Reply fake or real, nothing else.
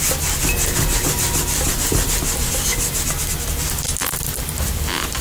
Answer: real